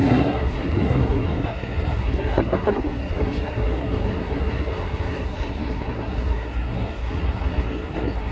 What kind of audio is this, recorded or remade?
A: remade